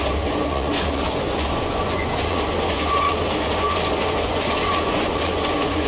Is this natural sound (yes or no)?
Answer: no